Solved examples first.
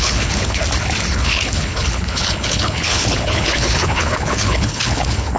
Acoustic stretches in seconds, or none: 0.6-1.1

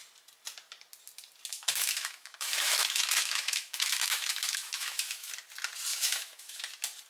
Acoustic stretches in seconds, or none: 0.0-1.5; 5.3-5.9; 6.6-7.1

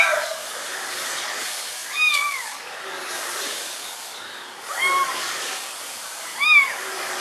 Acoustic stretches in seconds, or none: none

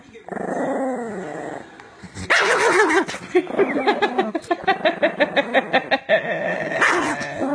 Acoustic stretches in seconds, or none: 0.0-7.5

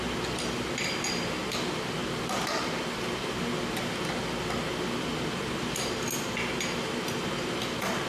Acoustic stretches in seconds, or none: 0.0-8.1

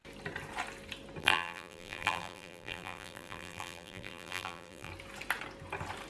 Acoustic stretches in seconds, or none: 0.0-1.2; 4.9-6.1